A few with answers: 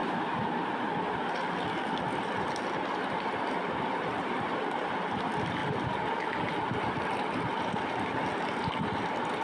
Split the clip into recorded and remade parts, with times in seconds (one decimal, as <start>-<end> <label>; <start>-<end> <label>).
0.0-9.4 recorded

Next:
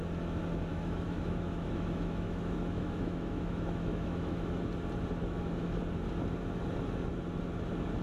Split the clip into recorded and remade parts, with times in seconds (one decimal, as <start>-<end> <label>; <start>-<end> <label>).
0.0-0.7 recorded; 0.7-4.6 remade; 4.6-5.2 recorded; 5.2-5.8 remade; 5.8-8.0 recorded

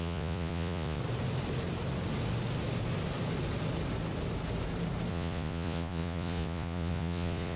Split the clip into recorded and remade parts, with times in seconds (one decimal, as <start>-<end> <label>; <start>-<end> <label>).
0.0-1.0 remade; 1.0-5.1 recorded; 5.1-7.6 remade

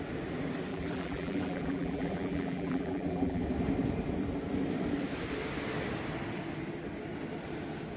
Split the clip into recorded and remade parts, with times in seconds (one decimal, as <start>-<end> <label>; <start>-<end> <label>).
0.0-0.7 recorded; 0.7-3.4 remade; 3.4-8.0 recorded

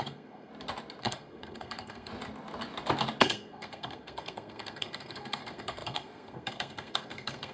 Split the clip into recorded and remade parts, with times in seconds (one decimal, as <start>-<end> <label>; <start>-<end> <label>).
0.0-0.5 remade; 0.5-1.0 recorded; 1.0-2.1 remade; 2.1-3.2 recorded; 3.2-7.5 remade